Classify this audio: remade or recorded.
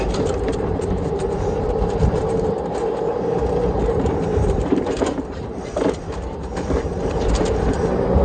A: remade